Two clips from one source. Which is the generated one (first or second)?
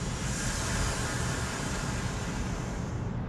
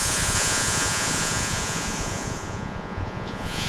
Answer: second